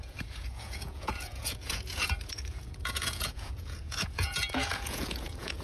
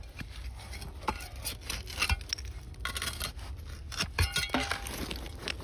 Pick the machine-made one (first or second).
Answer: first